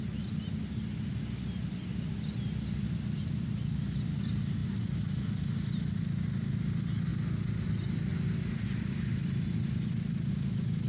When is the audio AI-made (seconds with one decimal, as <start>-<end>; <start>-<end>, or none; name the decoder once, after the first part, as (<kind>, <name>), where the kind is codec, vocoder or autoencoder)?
none

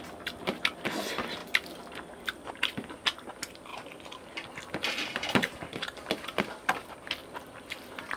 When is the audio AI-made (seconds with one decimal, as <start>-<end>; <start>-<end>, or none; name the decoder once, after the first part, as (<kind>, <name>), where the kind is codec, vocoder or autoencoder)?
1.4-2.5 (vocoder, BigVGAN v2); 3.7-6.7; 7.2-7.7